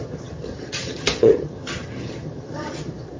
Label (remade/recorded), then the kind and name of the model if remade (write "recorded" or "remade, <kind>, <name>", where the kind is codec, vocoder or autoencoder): remade, vocoder, HiFi-GAN